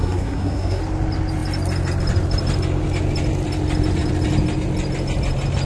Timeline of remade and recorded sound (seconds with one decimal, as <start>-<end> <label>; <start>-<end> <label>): 0.0-0.8 remade; 0.8-5.7 recorded